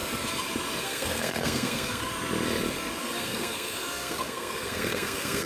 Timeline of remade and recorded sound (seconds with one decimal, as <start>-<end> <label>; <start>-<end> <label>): 0.0-0.8 recorded; 0.8-2.1 remade; 2.1-3.0 recorded; 3.0-5.5 remade